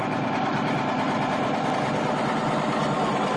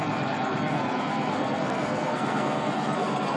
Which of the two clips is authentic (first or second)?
first